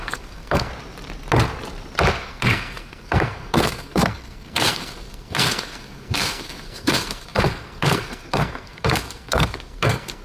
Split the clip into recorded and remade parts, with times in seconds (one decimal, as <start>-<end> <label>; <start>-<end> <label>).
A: 0.0-0.7 remade; 0.7-2.1 recorded; 2.1-10.2 remade